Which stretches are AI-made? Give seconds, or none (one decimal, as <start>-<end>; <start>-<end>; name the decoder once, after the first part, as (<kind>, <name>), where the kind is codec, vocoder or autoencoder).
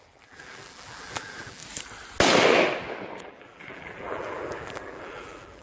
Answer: 0.0-1.6 (vocoder, BigVGAN v2); 3.2-5.6